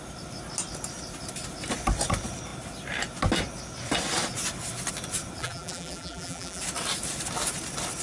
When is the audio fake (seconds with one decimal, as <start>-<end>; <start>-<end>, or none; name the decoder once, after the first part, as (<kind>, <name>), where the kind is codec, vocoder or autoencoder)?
5.4-6.6 (vocoder, BigVGAN v2)